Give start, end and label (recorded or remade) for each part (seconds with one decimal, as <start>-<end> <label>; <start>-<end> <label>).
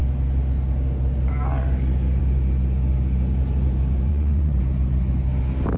0.0-4.1 recorded; 4.1-4.6 remade; 4.6-5.8 recorded